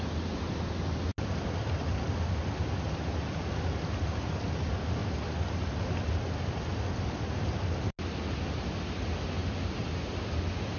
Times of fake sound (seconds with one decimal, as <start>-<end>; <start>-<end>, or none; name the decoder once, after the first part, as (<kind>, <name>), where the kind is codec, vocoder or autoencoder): none